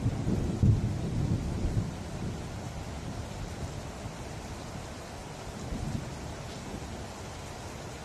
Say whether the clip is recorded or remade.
recorded